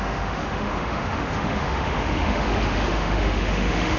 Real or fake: fake